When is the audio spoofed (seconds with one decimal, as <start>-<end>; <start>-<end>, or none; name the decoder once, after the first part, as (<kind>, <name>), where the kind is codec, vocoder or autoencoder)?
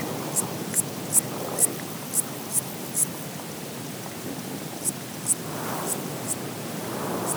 3.0-7.4 (vocoder, BigVGAN v2)